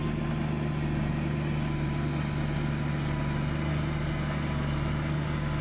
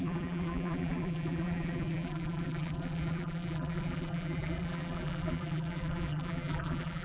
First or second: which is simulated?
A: second